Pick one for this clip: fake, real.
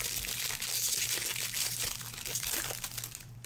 fake